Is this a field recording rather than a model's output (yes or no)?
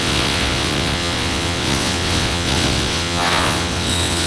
no